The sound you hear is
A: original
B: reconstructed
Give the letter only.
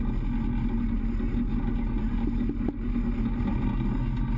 A